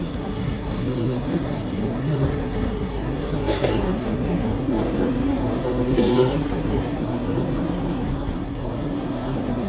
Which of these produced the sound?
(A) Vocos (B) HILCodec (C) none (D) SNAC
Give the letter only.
D